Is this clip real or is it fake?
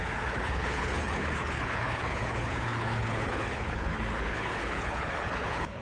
fake